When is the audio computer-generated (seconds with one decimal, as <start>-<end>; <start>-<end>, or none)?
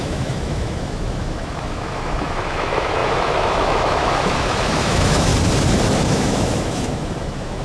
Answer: 0.0-5.3; 6.0-7.6